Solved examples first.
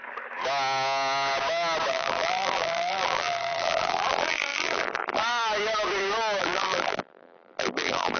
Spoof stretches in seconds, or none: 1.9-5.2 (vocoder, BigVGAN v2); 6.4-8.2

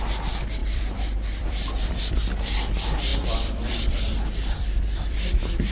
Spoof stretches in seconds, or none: 0.6-2.0 (vocoder, BigVGAN v2); 3.1-5.3

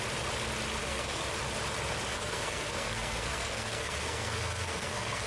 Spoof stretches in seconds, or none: 0.8-1.3 (codec, SNAC); 2.1-5.3